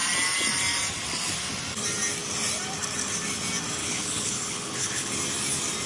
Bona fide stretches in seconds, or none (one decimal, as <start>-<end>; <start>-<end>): 0.0-3.8; 5.1-5.9